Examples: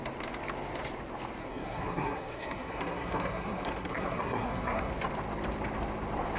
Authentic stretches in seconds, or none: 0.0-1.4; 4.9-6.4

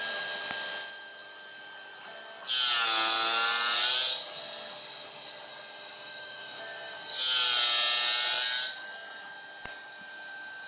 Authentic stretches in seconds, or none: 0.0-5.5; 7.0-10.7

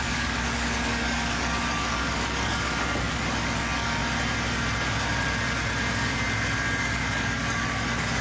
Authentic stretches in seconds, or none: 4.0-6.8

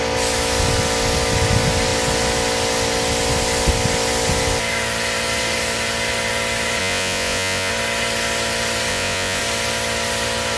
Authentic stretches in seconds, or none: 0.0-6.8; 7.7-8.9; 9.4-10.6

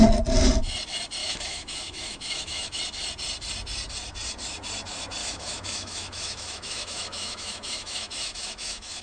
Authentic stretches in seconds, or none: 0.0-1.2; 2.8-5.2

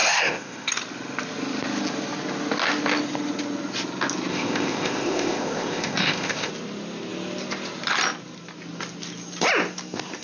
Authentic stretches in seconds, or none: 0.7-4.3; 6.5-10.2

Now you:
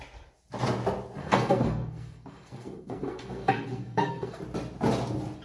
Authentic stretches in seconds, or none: 0.0-1.2; 4.4-5.4

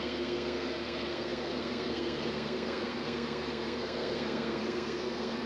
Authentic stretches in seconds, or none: none